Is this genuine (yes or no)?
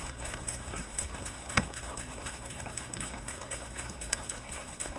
no